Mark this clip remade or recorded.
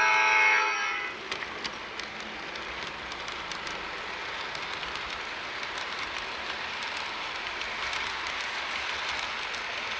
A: recorded